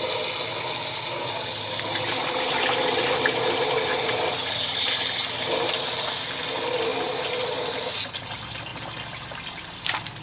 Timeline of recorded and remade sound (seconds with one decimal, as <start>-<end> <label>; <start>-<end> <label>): 0.0-10.2 recorded